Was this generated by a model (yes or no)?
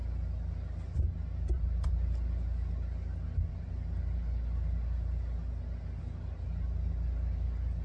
no